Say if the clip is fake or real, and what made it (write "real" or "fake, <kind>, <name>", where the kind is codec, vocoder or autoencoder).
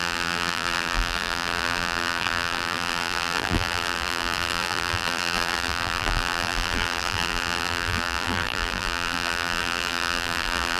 fake, vocoder, BigVGAN v2